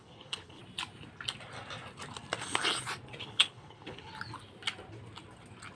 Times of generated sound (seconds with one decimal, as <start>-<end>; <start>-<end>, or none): 0.0-0.6; 3.2-4.1